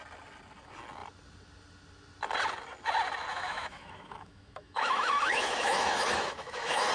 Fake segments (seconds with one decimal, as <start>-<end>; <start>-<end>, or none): 3.3-6.9